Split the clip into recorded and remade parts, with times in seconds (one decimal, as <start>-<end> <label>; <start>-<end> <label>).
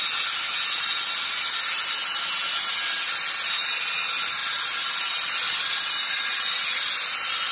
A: 0.0-7.5 recorded